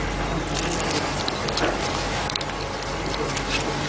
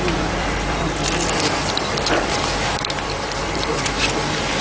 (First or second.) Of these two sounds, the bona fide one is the first